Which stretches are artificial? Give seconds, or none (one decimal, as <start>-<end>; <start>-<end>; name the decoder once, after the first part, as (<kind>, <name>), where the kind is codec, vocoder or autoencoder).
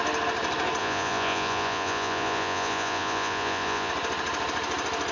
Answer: 0.8-3.9 (vocoder, Vocos)